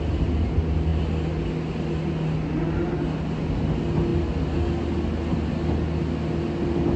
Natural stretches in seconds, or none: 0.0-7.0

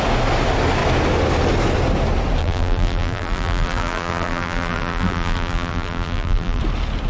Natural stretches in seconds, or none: 0.0-2.4; 6.6-7.1

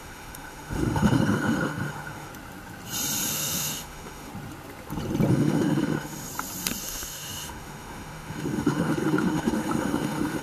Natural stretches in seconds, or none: 2.3-3.3; 4.3-5.3; 6.3-6.8